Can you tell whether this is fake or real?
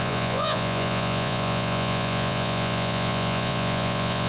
fake